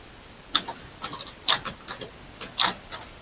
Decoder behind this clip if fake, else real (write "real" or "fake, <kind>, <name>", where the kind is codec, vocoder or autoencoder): real